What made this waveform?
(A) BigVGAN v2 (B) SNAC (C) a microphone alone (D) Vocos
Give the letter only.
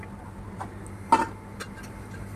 C